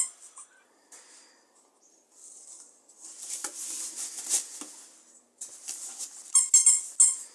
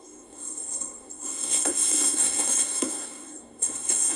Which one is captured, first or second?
first